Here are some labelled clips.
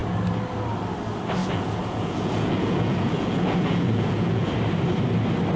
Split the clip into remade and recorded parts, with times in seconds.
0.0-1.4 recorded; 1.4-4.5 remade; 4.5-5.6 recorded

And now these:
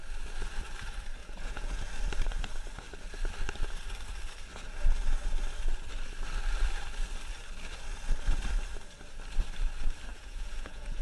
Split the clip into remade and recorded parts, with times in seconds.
0.0-1.2 recorded; 1.2-1.9 remade; 1.9-10.1 recorded; 10.1-11.0 remade

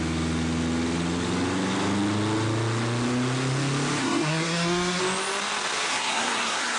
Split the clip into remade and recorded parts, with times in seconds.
0.0-4.0 recorded; 4.0-5.0 remade; 5.0-5.9 recorded; 5.9-6.8 remade

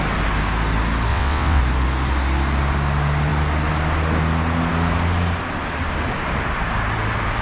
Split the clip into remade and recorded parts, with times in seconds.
0.0-1.1 recorded; 1.1-1.6 remade; 1.6-7.4 recorded

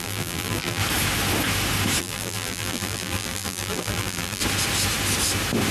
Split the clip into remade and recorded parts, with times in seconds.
0.0-0.8 remade; 0.8-2.0 recorded; 2.0-4.4 remade; 4.4-5.7 recorded

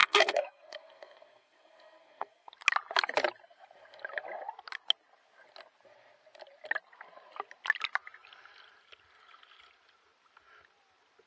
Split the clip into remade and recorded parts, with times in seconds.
0.0-2.5 remade; 2.5-11.3 recorded

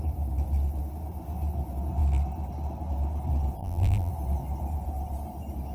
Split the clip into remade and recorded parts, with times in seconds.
0.0-3.6 recorded; 3.6-4.1 remade; 4.1-5.7 recorded